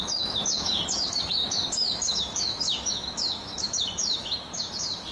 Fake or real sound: fake